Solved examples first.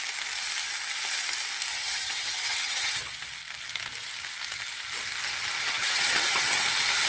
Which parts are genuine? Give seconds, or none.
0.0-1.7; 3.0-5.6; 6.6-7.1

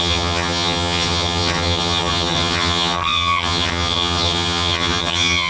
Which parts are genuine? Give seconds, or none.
none

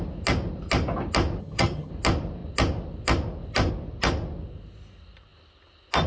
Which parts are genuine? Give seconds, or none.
0.0-1.4; 1.9-6.1

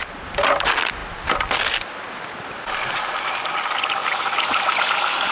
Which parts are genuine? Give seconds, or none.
0.0-5.3

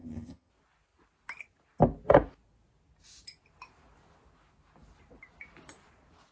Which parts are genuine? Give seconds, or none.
0.5-6.3